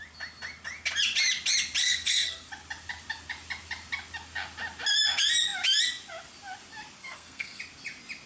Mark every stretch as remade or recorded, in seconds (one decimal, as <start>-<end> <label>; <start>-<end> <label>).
0.0-1.8 recorded; 1.8-2.5 remade; 2.5-7.0 recorded; 7.0-7.6 remade; 7.6-8.3 recorded